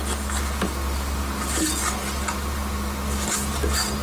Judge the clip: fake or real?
real